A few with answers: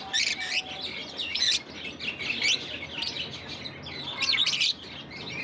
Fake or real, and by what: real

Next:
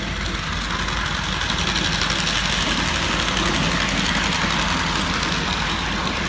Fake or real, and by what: real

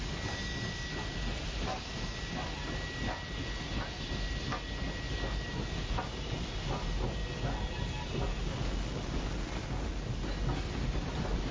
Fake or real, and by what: real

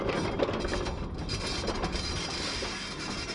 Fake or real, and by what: real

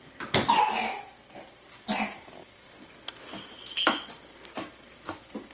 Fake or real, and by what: real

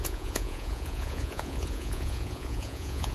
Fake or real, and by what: fake, vocoder, Vocos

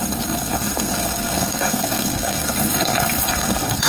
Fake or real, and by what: fake, codec, SNAC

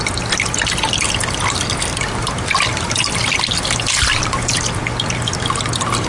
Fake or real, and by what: real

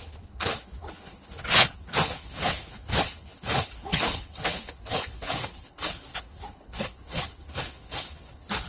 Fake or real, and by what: fake, codec, HILCodec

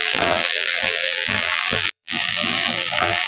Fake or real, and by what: fake, vocoder, BigVGAN v2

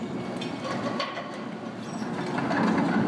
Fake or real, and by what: real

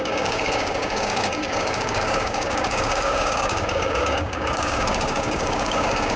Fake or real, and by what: fake, codec, DAC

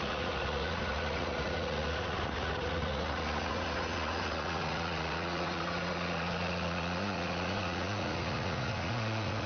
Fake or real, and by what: fake, vocoder, Vocos